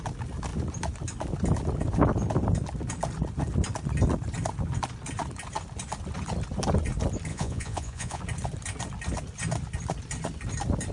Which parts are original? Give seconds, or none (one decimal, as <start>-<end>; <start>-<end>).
0.0-7.3; 8.2-10.9